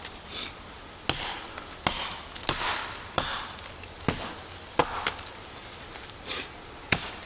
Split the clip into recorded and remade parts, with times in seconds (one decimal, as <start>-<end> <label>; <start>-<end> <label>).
0.0-2.8 recorded; 2.8-4.3 remade; 4.3-7.3 recorded